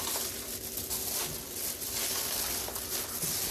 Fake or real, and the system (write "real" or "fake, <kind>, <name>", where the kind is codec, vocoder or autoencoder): real